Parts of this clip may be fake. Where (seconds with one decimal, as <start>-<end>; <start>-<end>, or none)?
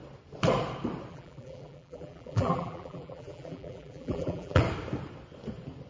1.1-4.6